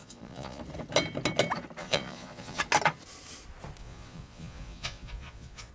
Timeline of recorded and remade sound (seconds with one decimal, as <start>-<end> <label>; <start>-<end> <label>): 0.0-0.6 remade; 0.6-1.8 recorded; 1.8-2.6 remade; 2.6-3.8 recorded; 3.8-5.7 remade